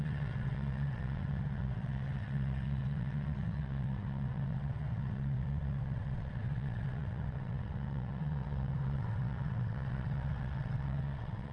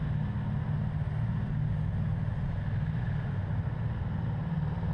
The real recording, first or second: second